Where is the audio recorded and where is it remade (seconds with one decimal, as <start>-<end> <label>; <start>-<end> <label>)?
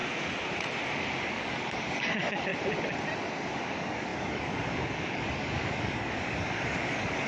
0.0-1.2 recorded; 1.2-2.5 remade; 2.5-3.5 recorded; 3.5-7.3 remade